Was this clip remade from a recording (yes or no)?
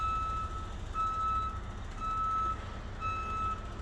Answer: no